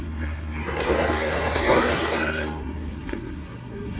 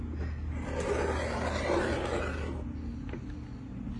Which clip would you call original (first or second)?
second